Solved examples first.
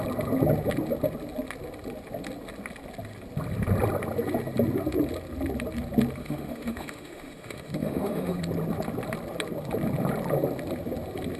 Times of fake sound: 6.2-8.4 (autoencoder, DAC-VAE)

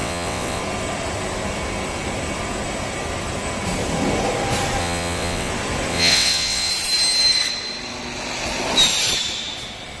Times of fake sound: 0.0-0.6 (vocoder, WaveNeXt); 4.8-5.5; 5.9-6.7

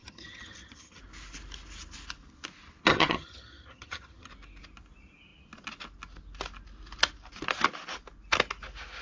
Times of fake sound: 0.0-1.0 (vocoder, HiFi-GAN); 2.9-4.3

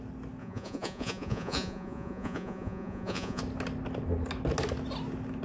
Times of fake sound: 0.4-3.4 (vocoder, Vocos)